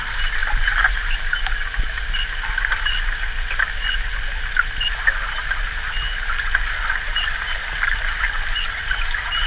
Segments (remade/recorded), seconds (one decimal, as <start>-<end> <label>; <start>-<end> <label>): 0.0-9.5 recorded